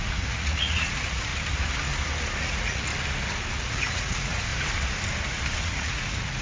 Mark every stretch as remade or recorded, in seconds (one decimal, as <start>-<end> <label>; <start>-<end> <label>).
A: 0.0-1.3 remade; 1.3-2.4 recorded; 2.4-2.9 remade; 2.9-3.5 recorded; 3.5-4.5 remade; 4.5-5.6 recorded; 5.6-6.4 remade